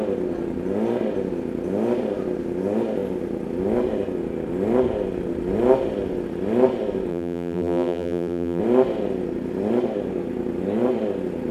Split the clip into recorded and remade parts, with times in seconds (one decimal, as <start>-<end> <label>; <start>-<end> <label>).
0.0-7.1 recorded; 7.1-8.6 remade; 8.6-11.5 recorded